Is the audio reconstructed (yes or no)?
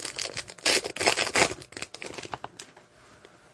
no